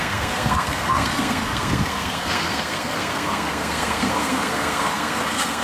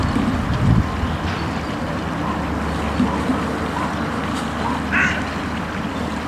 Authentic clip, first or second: second